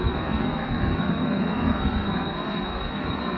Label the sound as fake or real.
fake